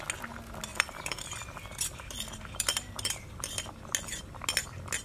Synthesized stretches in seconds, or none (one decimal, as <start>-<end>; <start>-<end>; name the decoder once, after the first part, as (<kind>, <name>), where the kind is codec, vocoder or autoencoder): 0.7-3.5 (vocoder, BigVGAN v2)